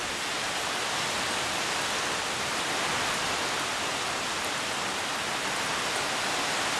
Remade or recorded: recorded